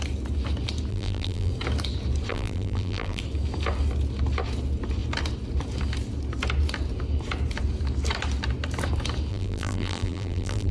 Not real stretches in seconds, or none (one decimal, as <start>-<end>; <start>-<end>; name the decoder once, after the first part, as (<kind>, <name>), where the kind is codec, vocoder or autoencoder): 0.9-1.5 (vocoder, BigVGAN v2); 2.3-3.2; 9.3-10.7